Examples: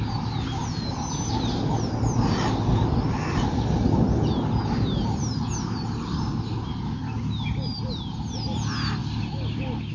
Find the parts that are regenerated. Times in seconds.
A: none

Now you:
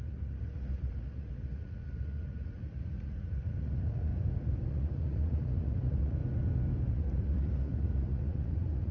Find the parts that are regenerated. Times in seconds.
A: 0.0-4.1 (vocoder, Vocos); 4.7-6.2; 6.9-8.9

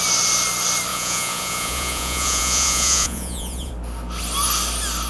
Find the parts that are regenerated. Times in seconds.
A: 0.9-3.7 (vocoder, Vocos)